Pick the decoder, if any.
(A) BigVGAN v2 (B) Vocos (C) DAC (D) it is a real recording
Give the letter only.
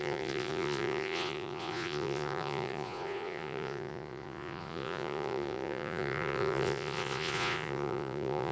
B